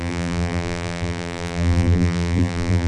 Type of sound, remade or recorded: remade